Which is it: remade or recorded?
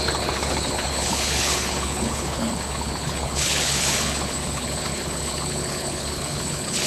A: remade